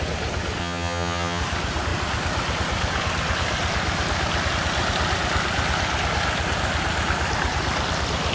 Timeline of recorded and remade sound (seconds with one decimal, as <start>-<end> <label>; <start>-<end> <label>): 0.0-0.6 recorded; 0.6-1.4 remade; 1.4-8.3 recorded

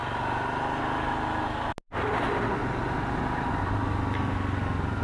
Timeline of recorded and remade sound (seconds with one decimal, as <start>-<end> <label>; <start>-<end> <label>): 0.0-0.8 remade; 0.8-5.0 recorded

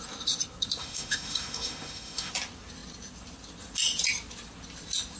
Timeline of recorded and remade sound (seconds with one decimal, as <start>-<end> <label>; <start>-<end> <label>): 0.0-0.8 recorded; 0.8-2.3 remade; 2.3-5.2 recorded

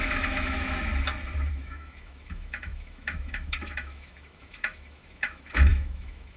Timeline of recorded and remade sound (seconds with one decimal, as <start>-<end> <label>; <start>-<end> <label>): 0.0-0.9 remade; 0.9-1.5 recorded; 1.5-6.4 remade